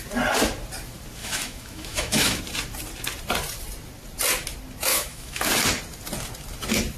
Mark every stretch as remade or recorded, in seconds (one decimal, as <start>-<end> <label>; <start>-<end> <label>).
0.0-1.2 recorded; 1.2-2.4 remade; 2.4-4.9 recorded; 4.9-5.4 remade; 5.4-7.0 recorded